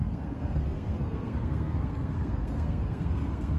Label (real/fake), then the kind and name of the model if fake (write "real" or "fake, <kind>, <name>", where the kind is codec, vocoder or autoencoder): fake, codec, SNAC